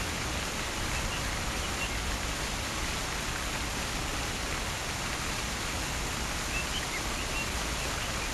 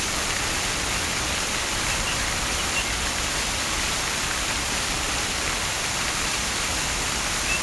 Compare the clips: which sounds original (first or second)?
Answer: first